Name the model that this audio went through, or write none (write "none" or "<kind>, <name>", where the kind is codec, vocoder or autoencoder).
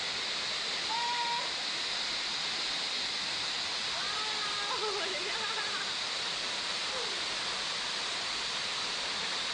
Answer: none